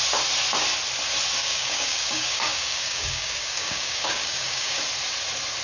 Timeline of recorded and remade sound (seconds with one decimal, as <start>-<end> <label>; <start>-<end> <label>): 0.0-1.4 recorded; 1.4-4.8 remade; 4.8-5.6 recorded